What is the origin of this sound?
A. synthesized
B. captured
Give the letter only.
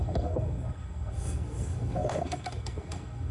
A